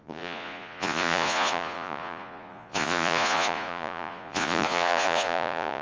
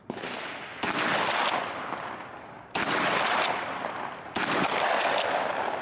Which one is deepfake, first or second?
first